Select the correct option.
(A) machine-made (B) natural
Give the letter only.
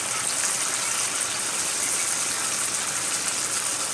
B